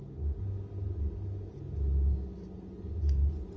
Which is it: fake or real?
real